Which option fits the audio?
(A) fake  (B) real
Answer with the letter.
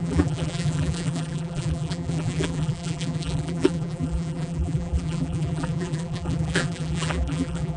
A